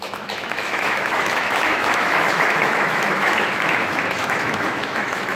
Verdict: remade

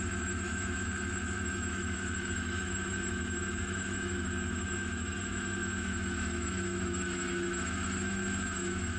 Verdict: remade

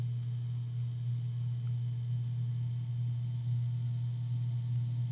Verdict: recorded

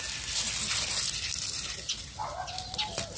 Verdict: recorded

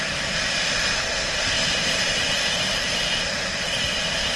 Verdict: recorded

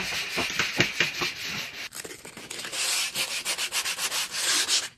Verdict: recorded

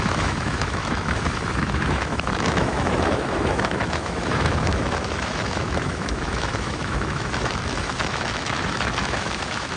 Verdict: remade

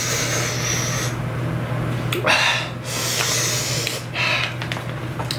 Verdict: recorded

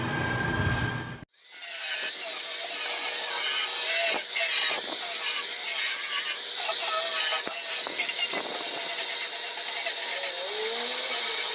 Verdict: recorded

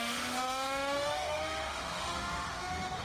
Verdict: remade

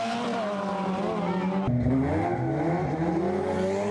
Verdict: recorded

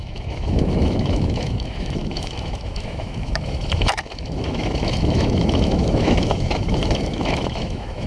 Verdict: remade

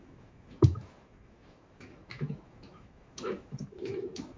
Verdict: remade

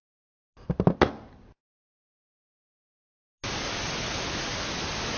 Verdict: recorded